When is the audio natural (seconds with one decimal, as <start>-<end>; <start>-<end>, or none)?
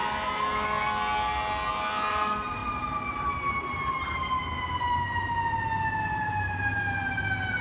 0.0-2.1